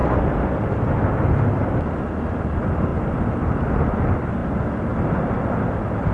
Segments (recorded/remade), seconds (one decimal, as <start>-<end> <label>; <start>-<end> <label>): 0.0-2.9 recorded; 2.9-3.5 remade; 3.5-6.1 recorded